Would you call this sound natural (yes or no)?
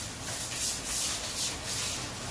yes